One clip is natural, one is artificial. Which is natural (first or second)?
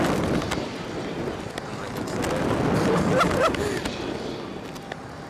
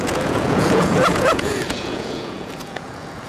first